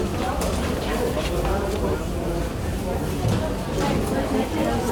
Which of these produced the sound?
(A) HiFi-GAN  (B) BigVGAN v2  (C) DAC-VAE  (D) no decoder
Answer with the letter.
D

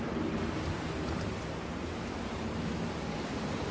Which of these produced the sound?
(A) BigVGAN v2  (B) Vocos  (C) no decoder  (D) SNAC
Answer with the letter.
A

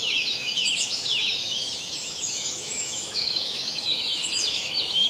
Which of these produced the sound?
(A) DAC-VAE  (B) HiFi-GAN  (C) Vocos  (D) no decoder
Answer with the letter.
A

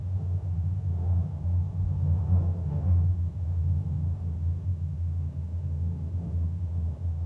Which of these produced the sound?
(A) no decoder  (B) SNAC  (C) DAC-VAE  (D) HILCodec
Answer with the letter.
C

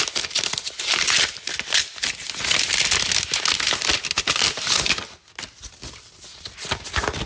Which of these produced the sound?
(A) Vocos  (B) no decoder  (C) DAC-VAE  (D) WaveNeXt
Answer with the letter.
B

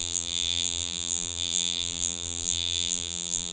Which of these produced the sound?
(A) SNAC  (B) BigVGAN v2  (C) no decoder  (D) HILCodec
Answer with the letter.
B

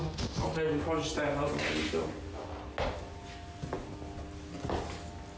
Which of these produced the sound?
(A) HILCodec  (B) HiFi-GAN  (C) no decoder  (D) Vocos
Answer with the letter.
C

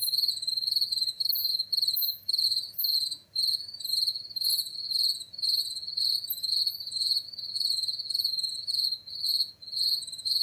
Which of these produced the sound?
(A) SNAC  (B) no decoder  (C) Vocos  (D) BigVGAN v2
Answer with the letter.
C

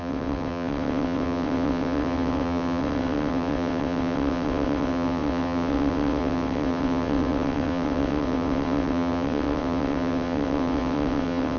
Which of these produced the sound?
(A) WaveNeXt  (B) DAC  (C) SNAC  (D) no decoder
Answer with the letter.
A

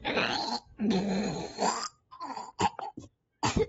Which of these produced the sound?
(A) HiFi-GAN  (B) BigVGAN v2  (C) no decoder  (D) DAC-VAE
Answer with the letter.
C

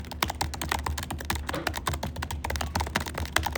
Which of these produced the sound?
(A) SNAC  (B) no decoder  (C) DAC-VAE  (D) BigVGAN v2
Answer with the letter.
B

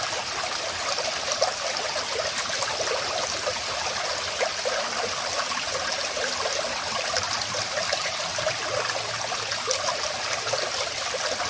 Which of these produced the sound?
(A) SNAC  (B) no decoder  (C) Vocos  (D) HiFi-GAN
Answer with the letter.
B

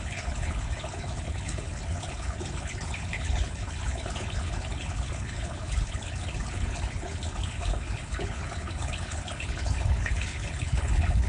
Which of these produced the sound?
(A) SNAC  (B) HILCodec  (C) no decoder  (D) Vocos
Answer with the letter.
B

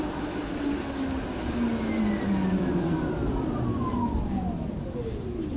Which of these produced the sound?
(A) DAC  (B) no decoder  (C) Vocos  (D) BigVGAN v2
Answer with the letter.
B